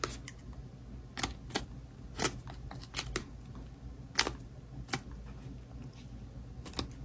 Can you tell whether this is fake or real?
real